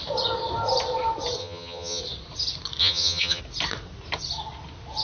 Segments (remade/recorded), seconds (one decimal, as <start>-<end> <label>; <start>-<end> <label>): 0.0-1.4 recorded; 1.4-2.0 remade; 2.0-2.8 recorded; 2.8-3.4 remade; 3.4-5.0 recorded